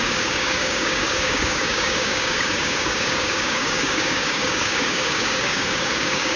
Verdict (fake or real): fake